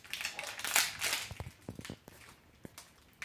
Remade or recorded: recorded